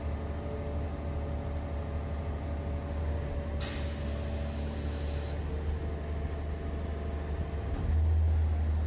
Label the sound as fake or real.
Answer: real